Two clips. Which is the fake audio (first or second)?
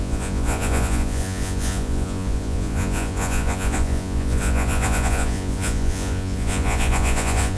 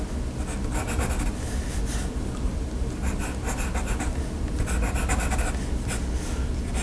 first